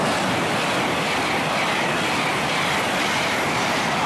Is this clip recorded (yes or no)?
yes